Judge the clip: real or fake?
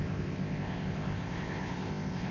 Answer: fake